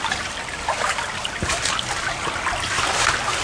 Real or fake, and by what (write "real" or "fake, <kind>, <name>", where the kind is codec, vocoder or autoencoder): real